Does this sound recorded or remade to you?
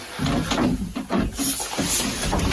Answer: recorded